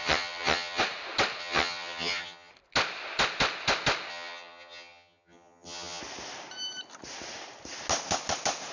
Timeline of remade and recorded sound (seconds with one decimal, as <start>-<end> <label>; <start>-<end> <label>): 0.0-0.8 remade; 0.8-1.4 recorded; 1.4-2.5 remade; 2.5-4.1 recorded; 4.1-6.0 remade; 6.0-8.7 recorded

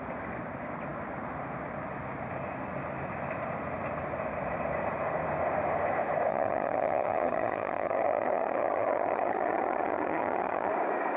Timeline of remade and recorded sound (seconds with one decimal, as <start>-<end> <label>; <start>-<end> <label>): 0.0-6.3 recorded; 6.3-10.7 remade; 10.7-11.2 recorded

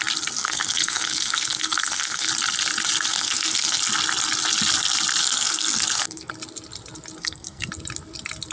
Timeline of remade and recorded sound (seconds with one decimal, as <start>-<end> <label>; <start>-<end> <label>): 0.0-0.4 recorded; 0.4-2.3 remade; 2.3-3.1 recorded; 3.1-3.8 remade; 3.8-5.2 recorded; 5.2-6.3 remade; 6.3-7.2 recorded; 7.2-7.7 remade; 7.7-8.5 recorded

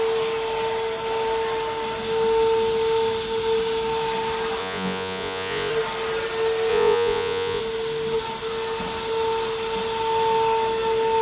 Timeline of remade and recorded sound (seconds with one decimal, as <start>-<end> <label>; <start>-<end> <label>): 0.0-4.6 recorded; 4.6-5.7 remade; 5.7-6.7 recorded; 6.7-7.6 remade; 7.6-11.2 recorded

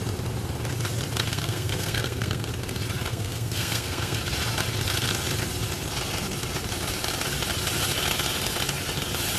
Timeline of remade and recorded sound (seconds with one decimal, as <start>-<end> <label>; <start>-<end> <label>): 0.0-1.3 recorded; 1.3-2.5 remade; 2.5-3.1 recorded; 3.1-4.2 remade; 4.2-9.4 recorded

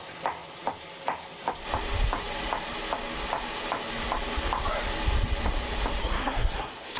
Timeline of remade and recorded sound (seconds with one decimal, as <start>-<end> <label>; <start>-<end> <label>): 0.0-6.0 recorded; 6.0-7.0 remade

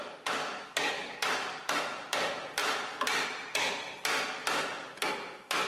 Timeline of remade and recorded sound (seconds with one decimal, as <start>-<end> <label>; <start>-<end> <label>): 0.0-0.4 recorded; 0.4-1.7 remade; 1.7-5.7 recorded